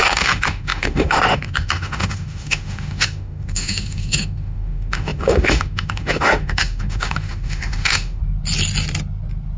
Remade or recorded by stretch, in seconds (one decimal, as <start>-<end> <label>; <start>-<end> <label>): 0.0-8.2 remade; 8.2-9.6 recorded